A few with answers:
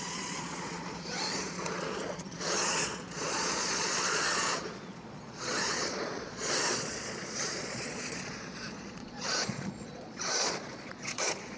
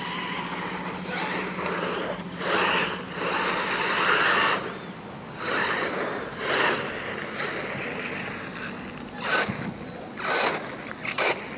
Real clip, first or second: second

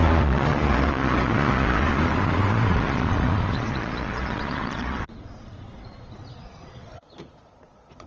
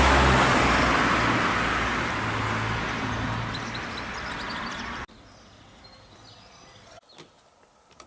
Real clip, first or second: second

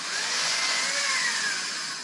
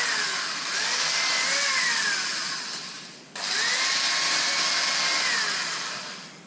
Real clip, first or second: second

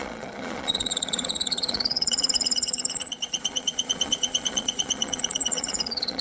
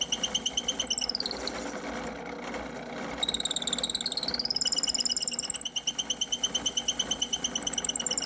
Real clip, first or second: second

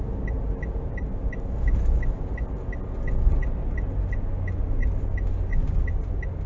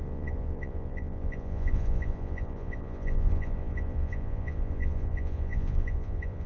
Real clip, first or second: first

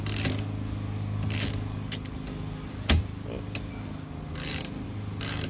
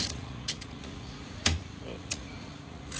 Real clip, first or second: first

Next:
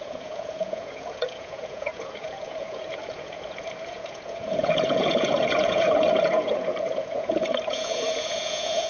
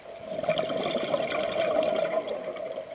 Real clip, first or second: second